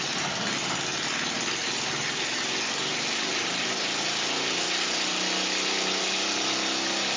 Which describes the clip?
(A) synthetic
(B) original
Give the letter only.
B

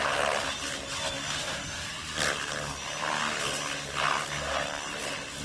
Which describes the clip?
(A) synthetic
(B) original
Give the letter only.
B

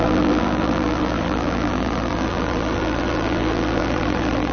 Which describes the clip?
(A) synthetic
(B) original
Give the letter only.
A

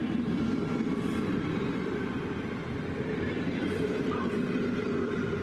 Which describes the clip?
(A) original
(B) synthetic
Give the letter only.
B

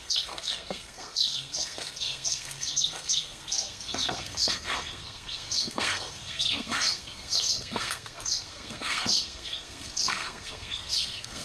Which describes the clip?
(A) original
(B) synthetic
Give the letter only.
B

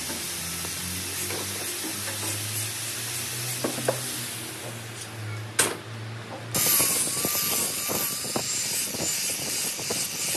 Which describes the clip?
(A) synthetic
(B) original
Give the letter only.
B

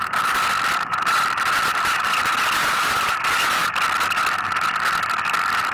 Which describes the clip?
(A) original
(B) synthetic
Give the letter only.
A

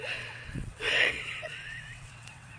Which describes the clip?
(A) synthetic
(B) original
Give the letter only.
A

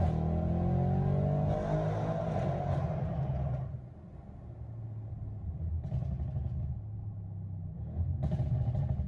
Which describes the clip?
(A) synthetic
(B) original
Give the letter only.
B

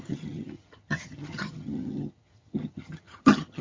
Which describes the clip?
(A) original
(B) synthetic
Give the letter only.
B